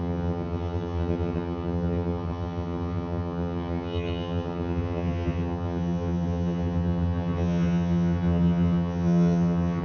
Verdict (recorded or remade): remade